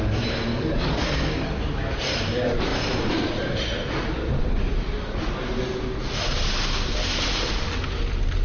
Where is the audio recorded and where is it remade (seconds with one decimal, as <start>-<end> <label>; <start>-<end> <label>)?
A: 0.0-0.5 recorded; 0.5-1.5 remade; 1.5-8.4 recorded